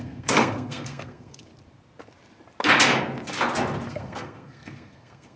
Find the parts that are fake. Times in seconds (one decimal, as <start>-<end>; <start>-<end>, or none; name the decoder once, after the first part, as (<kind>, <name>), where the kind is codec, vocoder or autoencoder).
0.0-1.5 (codec, SNAC); 3.9-5.4